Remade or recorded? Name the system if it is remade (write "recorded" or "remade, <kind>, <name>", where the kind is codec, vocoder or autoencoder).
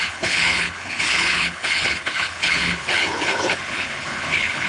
remade, codec, HILCodec